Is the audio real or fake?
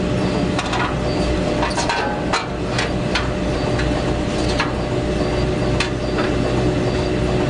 real